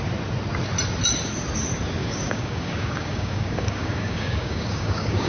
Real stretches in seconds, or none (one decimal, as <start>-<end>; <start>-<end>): 0.0-2.0

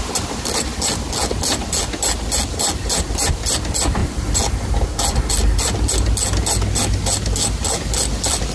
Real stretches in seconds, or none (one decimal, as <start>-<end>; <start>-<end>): 0.0-8.5

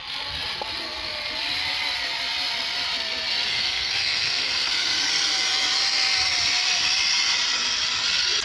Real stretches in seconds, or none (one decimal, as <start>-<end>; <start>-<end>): 0.0-3.5; 5.1-8.4